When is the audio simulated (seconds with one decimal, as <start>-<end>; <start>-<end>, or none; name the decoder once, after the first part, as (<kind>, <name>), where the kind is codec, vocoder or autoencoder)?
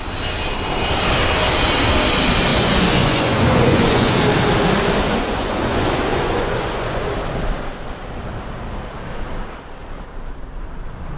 2.5-4.2 (vocoder, Vocos); 5.0-7.0